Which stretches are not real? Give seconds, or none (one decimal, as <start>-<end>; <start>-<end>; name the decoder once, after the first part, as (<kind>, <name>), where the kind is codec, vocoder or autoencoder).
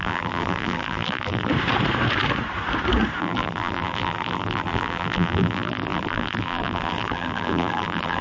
0.0-1.5 (vocoder, BigVGAN v2); 3.2-8.2